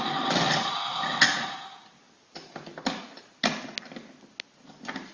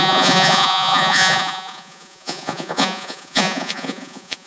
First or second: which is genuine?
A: first